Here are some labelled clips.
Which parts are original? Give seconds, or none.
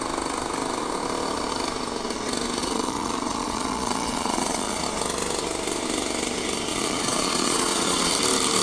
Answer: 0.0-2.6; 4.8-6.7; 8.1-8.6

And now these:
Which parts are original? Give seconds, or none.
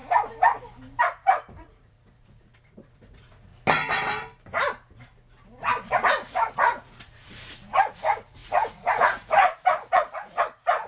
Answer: 0.0-1.0; 3.5-5.9